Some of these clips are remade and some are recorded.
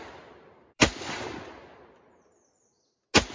recorded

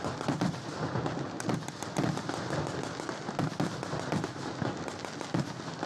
recorded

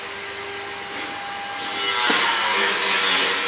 recorded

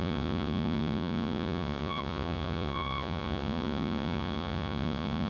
remade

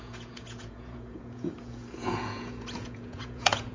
remade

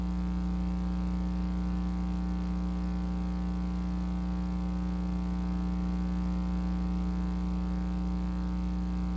recorded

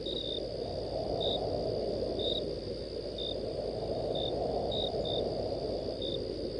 recorded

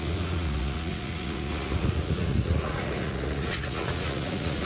remade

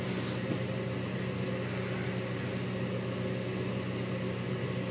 recorded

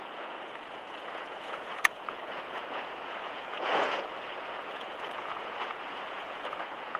remade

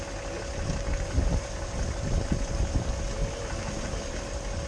recorded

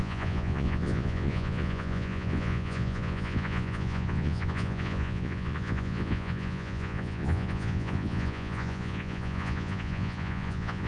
remade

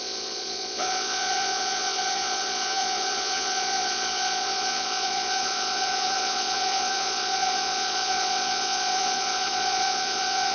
remade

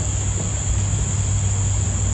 recorded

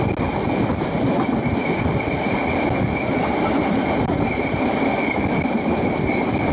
recorded